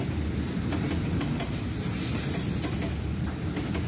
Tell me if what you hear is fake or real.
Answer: real